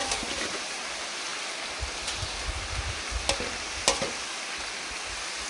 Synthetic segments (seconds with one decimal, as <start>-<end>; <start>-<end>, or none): 0.0-0.8